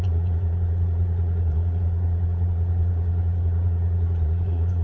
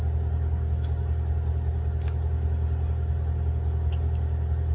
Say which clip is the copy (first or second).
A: first